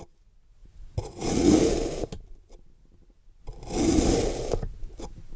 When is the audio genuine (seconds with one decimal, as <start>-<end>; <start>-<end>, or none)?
0.0-0.6; 2.1-5.4